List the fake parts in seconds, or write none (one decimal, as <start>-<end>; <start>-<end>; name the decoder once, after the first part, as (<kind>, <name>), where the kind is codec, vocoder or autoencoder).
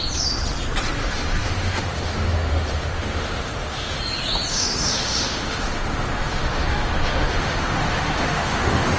1.0-4.0 (autoencoder, DAC-VAE); 4.5-9.0